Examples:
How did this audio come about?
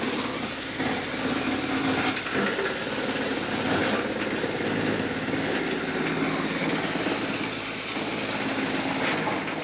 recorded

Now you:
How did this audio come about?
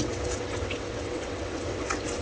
remade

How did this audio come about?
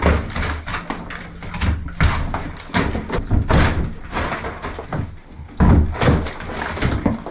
recorded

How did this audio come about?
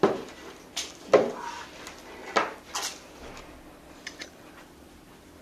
recorded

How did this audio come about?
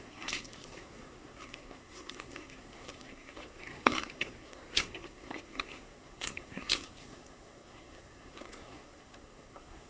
remade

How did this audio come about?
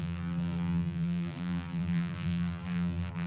remade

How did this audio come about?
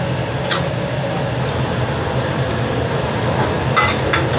recorded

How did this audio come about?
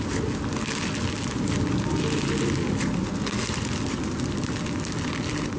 recorded